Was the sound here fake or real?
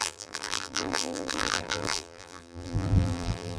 fake